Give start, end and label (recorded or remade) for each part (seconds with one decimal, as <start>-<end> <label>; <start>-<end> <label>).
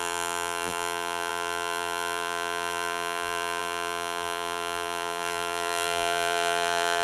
0.0-7.0 remade